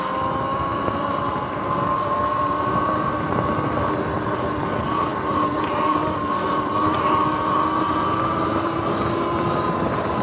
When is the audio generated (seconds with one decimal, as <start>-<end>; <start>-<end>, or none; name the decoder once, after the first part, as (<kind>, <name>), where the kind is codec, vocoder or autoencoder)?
0.5-3.8 (vocoder, BigVGAN v2); 5.1-5.6